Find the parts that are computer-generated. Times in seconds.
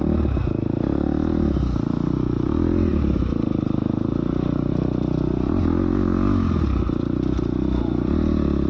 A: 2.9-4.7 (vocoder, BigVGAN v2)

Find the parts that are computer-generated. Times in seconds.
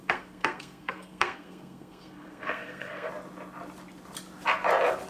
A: 0.0-3.1 (codec, SNAC)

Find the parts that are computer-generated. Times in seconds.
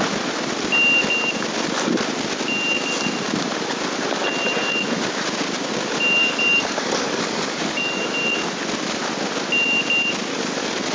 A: 6.2-8.0 (codec, DAC); 10.3-10.9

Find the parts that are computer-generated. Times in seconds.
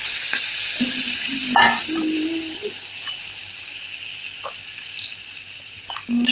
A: 4.6-5.6 (vocoder, BigVGAN v2)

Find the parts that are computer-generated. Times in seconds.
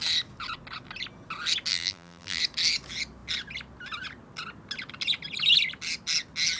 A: 1.7-2.4 (vocoder, BigVGAN v2)